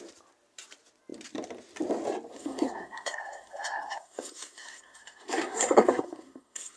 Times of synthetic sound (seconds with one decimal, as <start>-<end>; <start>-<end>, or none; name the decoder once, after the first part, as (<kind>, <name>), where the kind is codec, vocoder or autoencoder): 2.3-6.8 (codec, SNAC)